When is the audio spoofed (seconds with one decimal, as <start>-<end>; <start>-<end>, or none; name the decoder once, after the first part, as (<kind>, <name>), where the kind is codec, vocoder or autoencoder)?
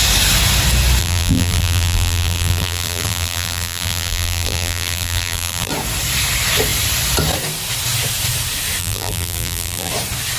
1.0-5.7 (vocoder, BigVGAN v2); 8.8-9.9